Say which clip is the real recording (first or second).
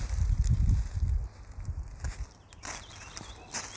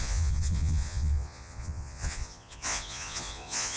first